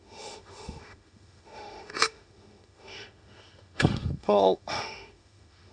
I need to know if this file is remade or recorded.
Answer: remade